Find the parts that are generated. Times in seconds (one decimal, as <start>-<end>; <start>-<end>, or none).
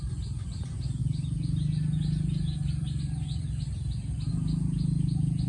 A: none